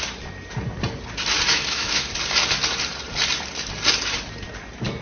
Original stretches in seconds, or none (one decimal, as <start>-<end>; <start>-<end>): 0.0-1.5; 2.1-5.0